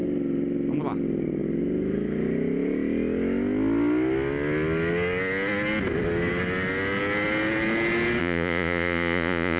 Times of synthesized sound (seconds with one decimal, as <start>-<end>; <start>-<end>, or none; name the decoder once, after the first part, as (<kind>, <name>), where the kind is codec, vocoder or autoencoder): 8.2-9.6 (vocoder, Vocos)